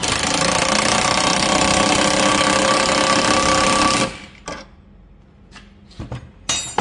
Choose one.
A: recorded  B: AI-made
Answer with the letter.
A